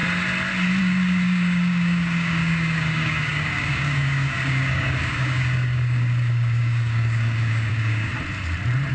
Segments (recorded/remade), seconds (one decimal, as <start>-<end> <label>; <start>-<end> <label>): 0.0-0.8 recorded; 0.8-8.1 remade; 8.1-8.9 recorded